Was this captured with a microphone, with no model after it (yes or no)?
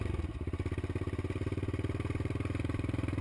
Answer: no